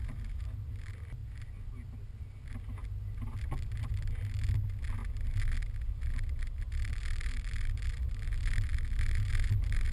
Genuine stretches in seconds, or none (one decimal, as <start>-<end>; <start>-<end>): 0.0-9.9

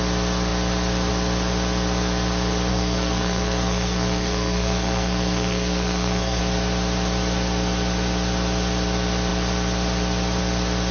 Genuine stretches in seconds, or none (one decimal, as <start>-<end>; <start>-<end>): 0.0-2.7; 6.4-10.9

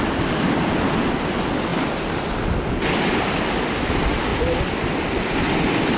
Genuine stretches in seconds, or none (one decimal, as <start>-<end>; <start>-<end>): 0.0-6.0